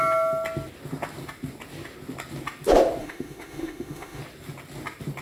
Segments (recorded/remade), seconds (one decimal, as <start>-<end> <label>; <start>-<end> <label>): 0.0-3.0 recorded; 3.0-4.2 remade; 4.2-5.2 recorded